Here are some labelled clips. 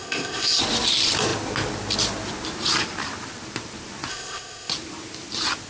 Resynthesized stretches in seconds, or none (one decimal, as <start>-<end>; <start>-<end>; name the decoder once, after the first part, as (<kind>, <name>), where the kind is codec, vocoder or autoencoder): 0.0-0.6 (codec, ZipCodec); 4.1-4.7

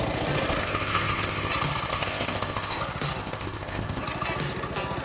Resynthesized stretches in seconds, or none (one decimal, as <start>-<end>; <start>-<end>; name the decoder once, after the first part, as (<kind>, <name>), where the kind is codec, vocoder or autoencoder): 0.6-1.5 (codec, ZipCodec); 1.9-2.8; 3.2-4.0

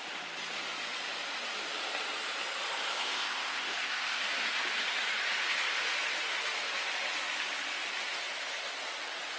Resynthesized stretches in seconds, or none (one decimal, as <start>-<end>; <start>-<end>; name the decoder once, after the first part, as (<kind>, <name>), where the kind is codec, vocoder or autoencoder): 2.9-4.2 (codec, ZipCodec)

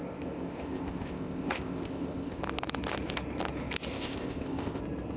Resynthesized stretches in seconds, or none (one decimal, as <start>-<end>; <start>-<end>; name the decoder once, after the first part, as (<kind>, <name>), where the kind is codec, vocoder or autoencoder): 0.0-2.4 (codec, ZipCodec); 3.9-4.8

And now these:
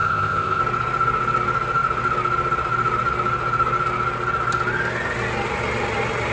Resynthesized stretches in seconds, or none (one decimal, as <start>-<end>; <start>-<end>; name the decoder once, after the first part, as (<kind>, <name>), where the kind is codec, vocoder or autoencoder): 0.0-0.6 (codec, ZipCodec)